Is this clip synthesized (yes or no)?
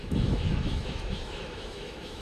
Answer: yes